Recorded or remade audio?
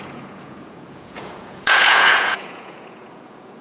remade